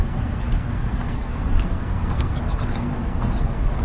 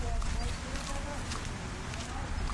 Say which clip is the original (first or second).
second